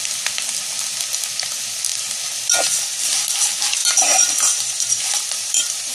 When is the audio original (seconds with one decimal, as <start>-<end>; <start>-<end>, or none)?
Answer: 0.0-3.8